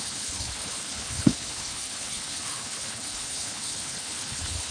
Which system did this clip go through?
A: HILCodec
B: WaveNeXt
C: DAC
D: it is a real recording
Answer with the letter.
A